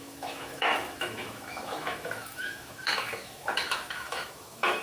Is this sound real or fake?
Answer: fake